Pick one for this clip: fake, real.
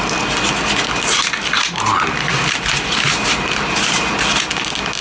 real